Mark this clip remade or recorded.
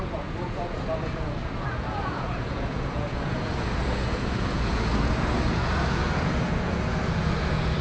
remade